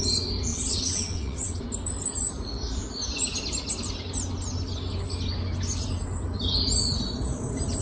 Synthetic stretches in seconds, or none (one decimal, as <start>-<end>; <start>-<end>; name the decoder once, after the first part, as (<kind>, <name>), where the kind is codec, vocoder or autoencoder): 0.5-1.6 (vocoder, WaveNeXt)